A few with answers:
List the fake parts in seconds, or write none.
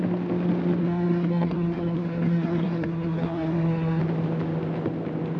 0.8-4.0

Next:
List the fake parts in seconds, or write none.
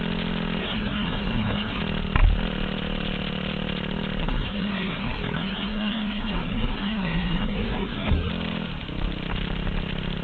0.6-1.8; 4.2-8.3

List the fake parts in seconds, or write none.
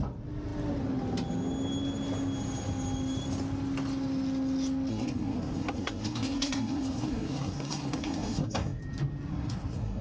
4.9-8.8; 9.3-10.0